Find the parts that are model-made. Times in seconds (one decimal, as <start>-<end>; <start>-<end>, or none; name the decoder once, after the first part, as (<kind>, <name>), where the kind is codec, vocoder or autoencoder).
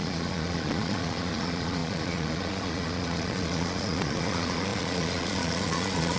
0.0-6.2 (vocoder, Vocos)